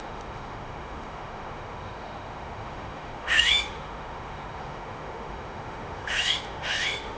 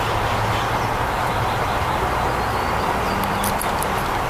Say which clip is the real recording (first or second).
second